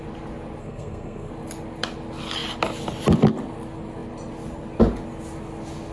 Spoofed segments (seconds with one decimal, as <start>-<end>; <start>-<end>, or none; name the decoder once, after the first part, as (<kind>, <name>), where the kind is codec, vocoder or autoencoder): 0.6-1.3 (codec, SNAC)

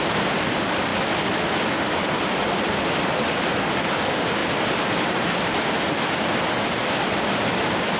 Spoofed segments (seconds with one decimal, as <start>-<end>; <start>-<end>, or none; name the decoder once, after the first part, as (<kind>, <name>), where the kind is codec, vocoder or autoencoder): none